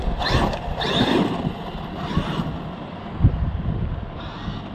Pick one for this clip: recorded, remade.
recorded